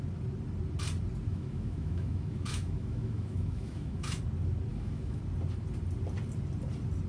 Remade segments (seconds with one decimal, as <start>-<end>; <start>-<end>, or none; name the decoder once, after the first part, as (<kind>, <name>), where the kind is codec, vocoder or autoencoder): 1.3-4.2 (autoencoder, DAC-VAE); 4.7-5.2